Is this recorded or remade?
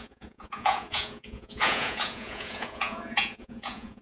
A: remade